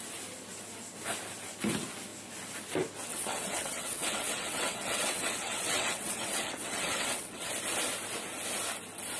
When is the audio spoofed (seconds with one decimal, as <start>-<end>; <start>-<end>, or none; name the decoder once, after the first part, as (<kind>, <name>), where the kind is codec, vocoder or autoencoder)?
3.1-7.5 (vocoder, WaveNeXt)